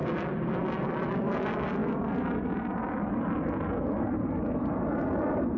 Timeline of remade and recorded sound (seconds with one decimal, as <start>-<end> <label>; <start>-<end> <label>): 0.0-5.6 recorded